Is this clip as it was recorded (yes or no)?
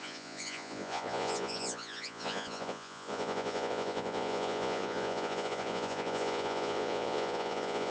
no